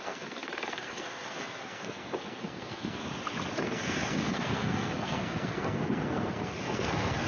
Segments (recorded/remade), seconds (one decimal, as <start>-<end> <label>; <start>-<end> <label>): 0.0-3.0 remade; 3.0-3.6 recorded; 3.6-7.3 remade